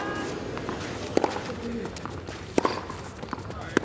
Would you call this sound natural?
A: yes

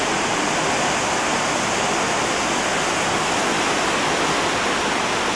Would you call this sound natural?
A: yes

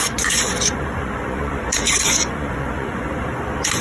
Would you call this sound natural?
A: no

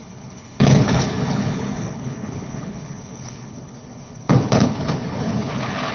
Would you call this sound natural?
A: no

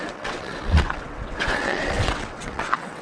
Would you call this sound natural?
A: no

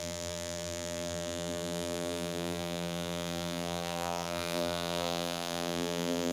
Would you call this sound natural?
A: no